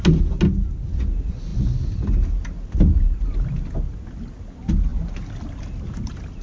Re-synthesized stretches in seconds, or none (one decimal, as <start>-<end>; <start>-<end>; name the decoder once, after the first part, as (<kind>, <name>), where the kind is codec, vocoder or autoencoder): none